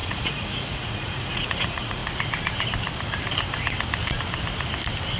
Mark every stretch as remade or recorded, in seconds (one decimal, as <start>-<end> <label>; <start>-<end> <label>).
0.0-2.0 remade; 2.0-5.2 recorded